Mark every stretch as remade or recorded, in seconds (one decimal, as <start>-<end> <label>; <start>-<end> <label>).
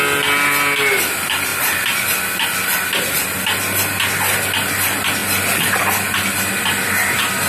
0.0-7.5 recorded